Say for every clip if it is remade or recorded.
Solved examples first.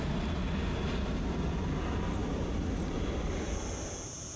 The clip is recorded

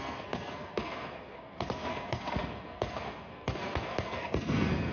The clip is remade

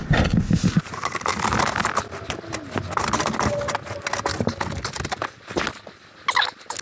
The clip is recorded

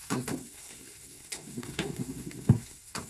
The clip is remade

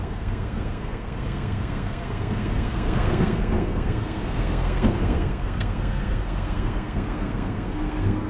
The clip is remade